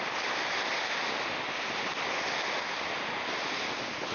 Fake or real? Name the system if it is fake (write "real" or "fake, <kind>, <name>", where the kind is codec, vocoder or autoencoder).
real